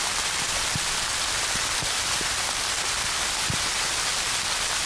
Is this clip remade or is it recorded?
recorded